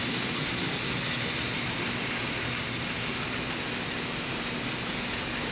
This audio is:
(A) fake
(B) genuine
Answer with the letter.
B